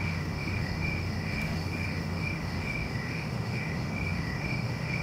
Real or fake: fake